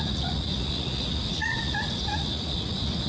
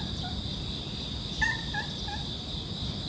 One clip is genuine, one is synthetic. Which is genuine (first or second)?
second